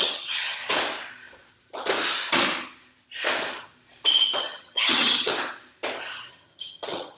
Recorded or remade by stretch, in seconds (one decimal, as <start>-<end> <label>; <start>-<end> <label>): 0.0-0.6 remade; 0.6-4.4 recorded; 4.4-5.3 remade; 5.3-6.3 recorded; 6.3-7.2 remade